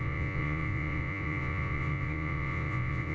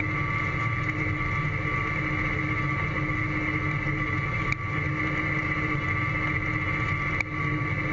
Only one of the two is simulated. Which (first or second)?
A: first